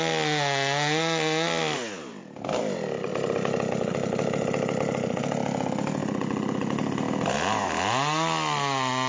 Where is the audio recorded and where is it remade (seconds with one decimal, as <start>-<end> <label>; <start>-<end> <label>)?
0.0-9.1 recorded